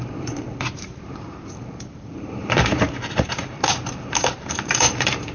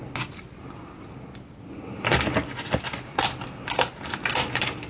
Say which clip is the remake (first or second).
first